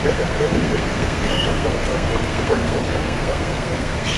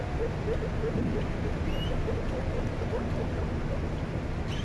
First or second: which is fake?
first